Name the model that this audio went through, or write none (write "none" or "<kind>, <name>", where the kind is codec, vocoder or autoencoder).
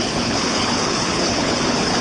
codec, HILCodec